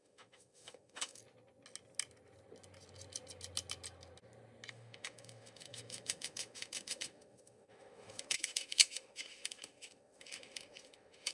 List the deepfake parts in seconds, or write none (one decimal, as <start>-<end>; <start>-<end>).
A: 0.0-1.2; 4.7-11.3